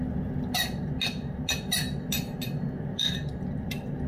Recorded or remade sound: recorded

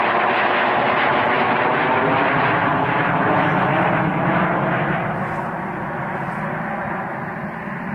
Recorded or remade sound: recorded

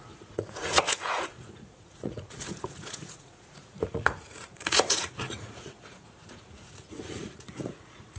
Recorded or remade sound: remade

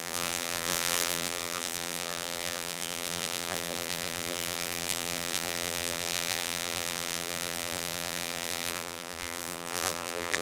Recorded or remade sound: remade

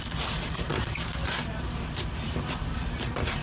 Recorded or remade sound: remade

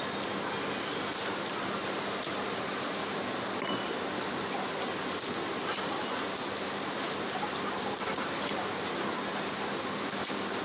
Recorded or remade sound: recorded